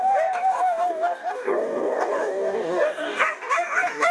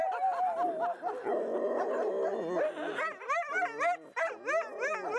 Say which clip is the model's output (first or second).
first